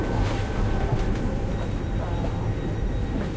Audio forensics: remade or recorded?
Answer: recorded